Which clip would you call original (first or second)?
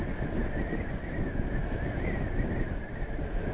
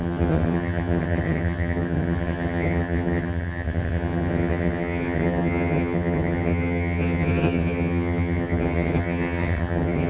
first